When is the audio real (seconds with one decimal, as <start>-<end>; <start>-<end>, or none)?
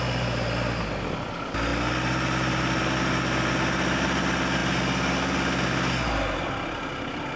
0.0-7.4